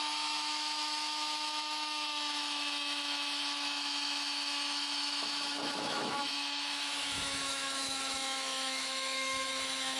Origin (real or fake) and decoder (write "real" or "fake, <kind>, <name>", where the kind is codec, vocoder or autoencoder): fake, autoencoder, DAC-VAE